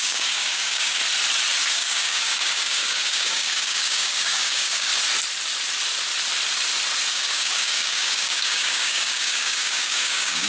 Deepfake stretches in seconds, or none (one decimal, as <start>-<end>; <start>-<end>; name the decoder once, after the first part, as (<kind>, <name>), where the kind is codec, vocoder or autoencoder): 0.0-1.0 (codec, DAC); 1.7-4.9; 7.1-10.5